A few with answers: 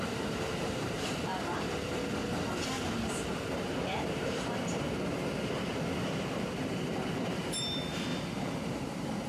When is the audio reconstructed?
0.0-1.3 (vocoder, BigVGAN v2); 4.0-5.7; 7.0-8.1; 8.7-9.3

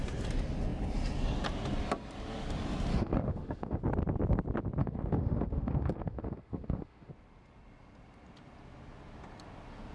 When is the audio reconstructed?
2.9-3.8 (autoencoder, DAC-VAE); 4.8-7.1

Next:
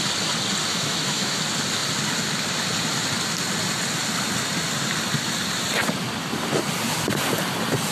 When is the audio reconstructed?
0.7-1.4 (autoencoder, DAC-VAE)

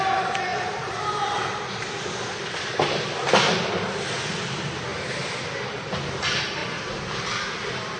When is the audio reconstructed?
0.5-1.5 (vocoder, BigVGAN v2)

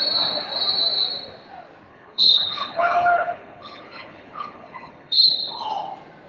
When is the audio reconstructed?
1.9-5.7 (codec, HILCodec)